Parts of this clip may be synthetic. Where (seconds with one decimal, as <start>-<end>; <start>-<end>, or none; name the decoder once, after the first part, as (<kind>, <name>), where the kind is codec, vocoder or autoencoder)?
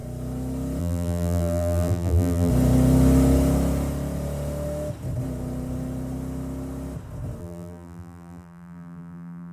0.8-2.5 (vocoder, BigVGAN v2); 7.4-9.5